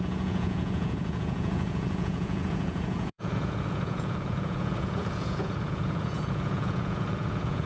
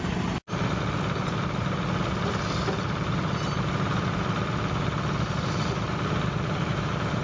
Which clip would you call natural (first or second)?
second